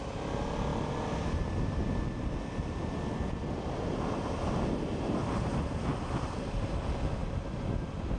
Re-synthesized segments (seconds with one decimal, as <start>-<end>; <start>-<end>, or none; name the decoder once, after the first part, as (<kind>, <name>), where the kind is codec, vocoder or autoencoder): none